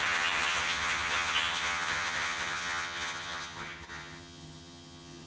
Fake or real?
fake